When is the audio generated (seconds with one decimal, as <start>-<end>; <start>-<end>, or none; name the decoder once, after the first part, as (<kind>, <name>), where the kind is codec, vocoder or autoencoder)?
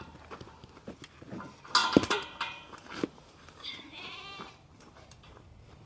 1.8-5.3 (vocoder, BigVGAN v2)